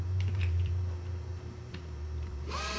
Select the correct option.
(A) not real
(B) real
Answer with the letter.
A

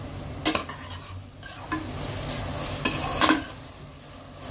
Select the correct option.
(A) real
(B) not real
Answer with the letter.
A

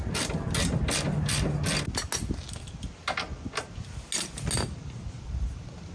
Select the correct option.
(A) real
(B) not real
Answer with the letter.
A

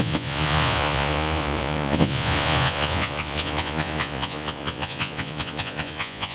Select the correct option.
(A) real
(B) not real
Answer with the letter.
B